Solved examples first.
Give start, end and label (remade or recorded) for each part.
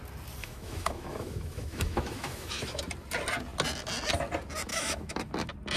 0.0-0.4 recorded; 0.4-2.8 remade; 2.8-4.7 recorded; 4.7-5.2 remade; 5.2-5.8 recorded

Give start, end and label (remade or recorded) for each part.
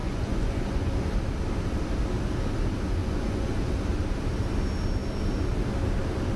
0.0-0.9 remade; 0.9-3.0 recorded; 3.0-3.7 remade; 3.7-6.4 recorded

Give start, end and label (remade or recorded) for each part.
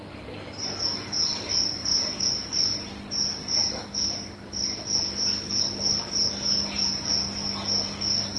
0.0-1.8 recorded; 1.8-2.3 remade; 2.3-8.4 recorded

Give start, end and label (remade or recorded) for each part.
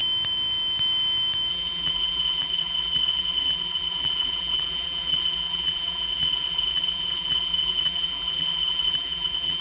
0.0-1.5 recorded; 1.5-9.6 remade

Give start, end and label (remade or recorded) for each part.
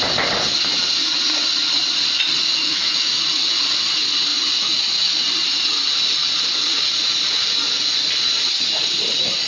0.0-2.6 recorded; 2.6-3.2 remade; 3.2-9.5 recorded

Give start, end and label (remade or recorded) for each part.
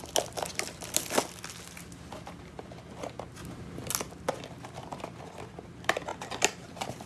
0.0-3.4 recorded; 3.4-3.9 remade; 3.9-4.9 recorded; 4.9-5.5 remade; 5.5-6.1 recorded; 6.1-7.1 remade